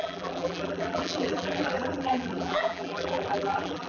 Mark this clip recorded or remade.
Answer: remade